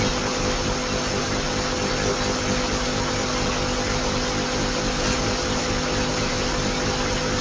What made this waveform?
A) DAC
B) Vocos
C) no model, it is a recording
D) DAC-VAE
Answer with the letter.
C